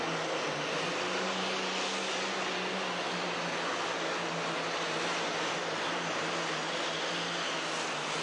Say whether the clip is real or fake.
real